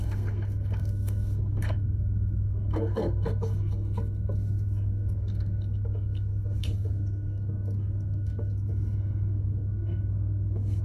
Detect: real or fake fake